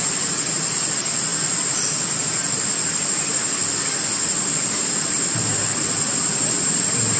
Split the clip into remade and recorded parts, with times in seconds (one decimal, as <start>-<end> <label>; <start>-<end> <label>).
0.0-7.2 recorded